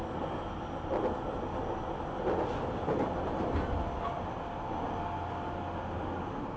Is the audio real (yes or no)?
yes